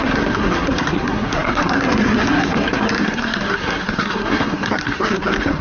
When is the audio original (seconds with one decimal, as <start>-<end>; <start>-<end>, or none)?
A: none